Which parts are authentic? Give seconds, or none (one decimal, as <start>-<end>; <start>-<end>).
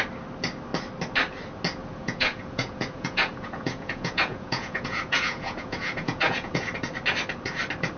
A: 0.0-1.8; 6.6-8.0